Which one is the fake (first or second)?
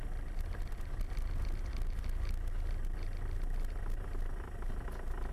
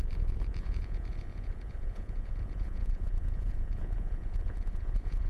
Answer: second